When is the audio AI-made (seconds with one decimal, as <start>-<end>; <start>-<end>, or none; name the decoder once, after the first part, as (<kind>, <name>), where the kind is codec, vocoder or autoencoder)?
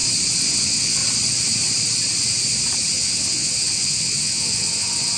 0.5-1.0 (vocoder, WaveNeXt); 2.9-5.2